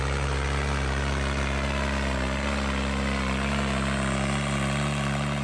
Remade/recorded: recorded